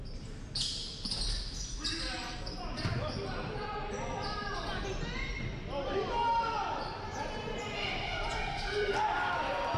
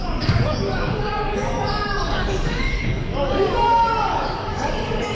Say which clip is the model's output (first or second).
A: second